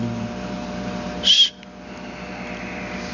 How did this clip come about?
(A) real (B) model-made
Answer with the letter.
A